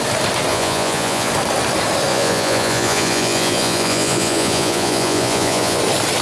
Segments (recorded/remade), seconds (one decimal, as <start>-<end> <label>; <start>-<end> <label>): 0.0-0.5 recorded; 0.5-1.3 remade; 1.3-2.1 recorded; 2.1-5.8 remade; 5.8-6.2 recorded